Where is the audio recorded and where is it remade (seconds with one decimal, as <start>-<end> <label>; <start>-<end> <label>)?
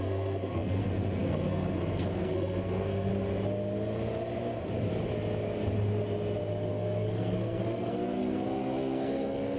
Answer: 0.0-3.1 remade; 3.1-6.7 recorded; 6.7-9.6 remade